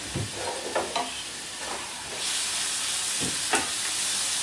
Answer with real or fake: real